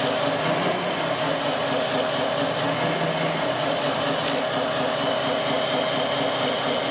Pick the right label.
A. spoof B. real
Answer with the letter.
B